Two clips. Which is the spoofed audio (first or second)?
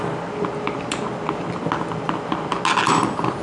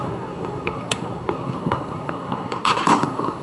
second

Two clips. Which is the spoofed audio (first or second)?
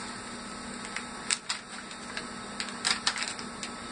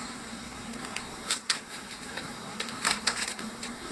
second